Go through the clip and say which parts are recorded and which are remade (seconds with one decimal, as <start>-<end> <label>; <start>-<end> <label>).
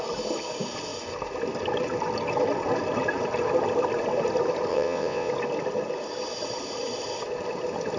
0.0-4.7 recorded; 4.7-5.3 remade; 5.3-8.0 recorded